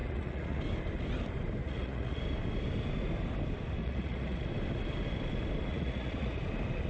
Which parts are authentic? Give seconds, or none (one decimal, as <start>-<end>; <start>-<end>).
0.6-1.6; 2.2-3.8; 4.5-5.7; 6.4-6.9